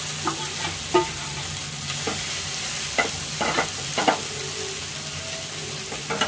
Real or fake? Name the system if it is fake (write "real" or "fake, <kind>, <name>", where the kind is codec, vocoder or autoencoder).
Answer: real